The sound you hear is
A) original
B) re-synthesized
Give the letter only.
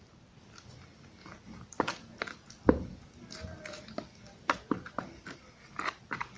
A